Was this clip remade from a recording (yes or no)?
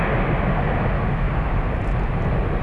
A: no